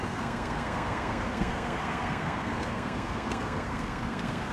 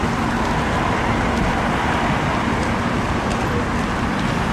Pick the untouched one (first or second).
second